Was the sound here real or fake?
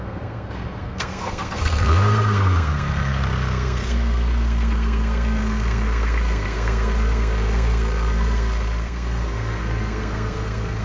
fake